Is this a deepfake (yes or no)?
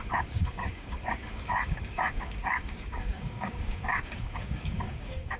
yes